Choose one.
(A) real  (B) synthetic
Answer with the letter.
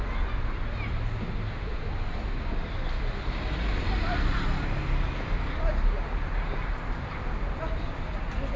A